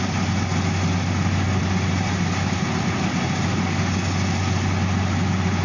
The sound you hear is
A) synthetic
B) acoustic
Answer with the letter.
B